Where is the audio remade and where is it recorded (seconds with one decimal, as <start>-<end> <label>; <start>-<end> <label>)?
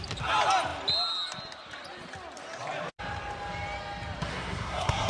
0.0-4.3 recorded; 4.3-5.1 remade